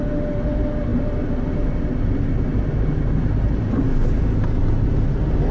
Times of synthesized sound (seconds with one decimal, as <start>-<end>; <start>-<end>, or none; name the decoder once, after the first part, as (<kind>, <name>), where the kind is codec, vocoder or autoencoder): none